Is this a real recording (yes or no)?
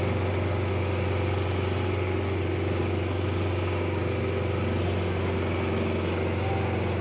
yes